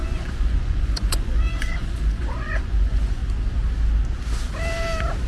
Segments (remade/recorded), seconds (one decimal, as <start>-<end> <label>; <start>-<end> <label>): 0.0-3.2 remade; 3.2-5.3 recorded